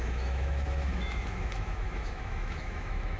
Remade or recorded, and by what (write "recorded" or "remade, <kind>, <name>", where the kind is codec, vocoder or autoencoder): remade, autoencoder, DAC-VAE